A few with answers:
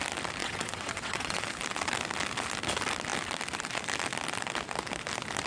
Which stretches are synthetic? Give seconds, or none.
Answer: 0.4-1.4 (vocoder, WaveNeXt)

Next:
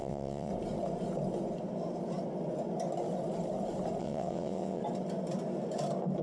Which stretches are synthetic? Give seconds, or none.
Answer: 0.0-0.5 (vocoder, WaveNeXt); 4.0-4.8

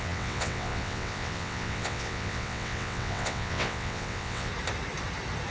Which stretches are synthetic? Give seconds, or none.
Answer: 0.0-4.5 (vocoder, WaveNeXt)

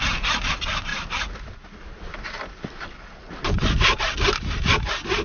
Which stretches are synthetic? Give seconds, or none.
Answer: none

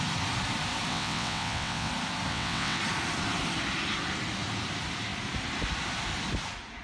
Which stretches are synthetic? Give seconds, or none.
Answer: 0.9-1.9 (vocoder, WaveNeXt); 2.3-2.8

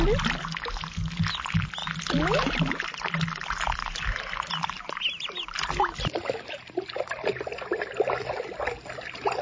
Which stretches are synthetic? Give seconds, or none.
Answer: none

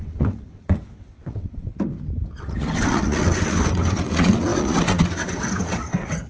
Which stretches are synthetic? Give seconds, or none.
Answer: 0.0-1.7 (vocoder, WaveNeXt); 2.3-6.3

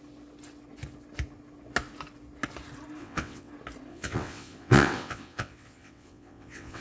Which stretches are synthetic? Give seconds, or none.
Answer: 3.0-3.5 (vocoder, WaveNeXt); 3.9-6.8